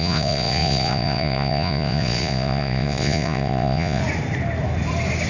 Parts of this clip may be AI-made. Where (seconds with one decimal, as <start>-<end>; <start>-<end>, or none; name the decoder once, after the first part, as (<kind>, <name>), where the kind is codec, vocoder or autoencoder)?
0.0-4.0 (vocoder, Vocos)